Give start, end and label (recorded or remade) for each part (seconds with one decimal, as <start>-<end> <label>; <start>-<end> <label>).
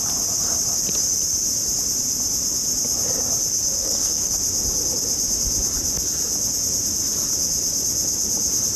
0.0-3.8 recorded; 3.8-4.3 remade; 4.3-8.8 recorded